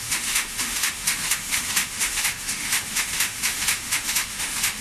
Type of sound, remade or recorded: remade